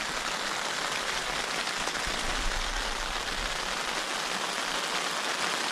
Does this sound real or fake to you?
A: real